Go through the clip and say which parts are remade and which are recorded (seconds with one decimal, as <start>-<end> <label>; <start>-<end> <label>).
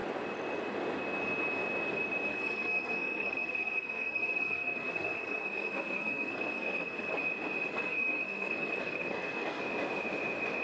0.0-2.3 recorded; 2.3-7.2 remade; 7.2-7.7 recorded; 7.7-9.6 remade; 9.6-10.6 recorded